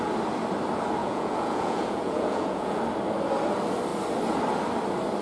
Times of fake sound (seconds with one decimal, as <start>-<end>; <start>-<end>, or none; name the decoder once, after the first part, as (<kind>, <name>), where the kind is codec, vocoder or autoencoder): 1.0-2.8 (vocoder, Vocos)